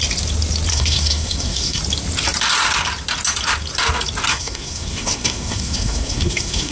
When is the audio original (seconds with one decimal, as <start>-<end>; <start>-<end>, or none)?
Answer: 0.0-0.7; 1.8-4.3